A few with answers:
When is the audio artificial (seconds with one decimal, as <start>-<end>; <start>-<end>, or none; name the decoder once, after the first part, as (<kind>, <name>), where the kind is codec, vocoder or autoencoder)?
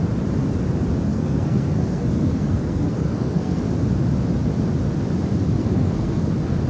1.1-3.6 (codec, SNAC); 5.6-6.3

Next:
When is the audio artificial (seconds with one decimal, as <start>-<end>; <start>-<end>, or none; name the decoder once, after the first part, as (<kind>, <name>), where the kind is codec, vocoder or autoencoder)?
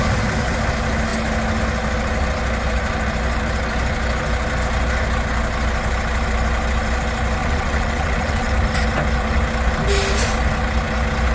7.4-8.5 (vocoder, WaveNeXt)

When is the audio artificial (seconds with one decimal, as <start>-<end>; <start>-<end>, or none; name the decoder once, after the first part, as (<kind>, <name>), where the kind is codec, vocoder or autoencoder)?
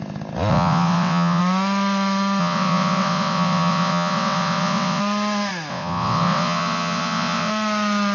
0.5-1.4 (vocoder, WaveNeXt); 2.4-5.0; 5.7-7.5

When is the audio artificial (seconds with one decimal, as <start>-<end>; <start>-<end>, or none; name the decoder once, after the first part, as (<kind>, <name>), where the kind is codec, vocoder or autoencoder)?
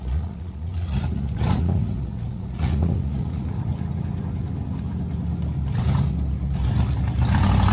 0.0-3.7 (vocoder, Vocos)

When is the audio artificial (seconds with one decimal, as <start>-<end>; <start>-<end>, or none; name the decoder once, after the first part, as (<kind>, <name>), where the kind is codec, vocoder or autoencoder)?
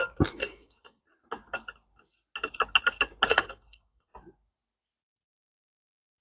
0.4-1.0 (codec, SNAC); 3.3-4.1